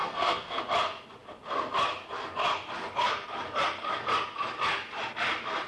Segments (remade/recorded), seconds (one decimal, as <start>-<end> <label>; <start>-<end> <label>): 0.0-0.6 remade; 0.6-5.7 recorded